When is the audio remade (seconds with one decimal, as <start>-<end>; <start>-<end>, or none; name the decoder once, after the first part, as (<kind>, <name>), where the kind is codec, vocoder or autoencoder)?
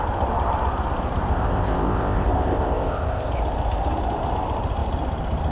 1.3-3.3 (codec, ZipCodec)